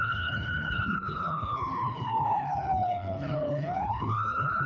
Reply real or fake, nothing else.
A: fake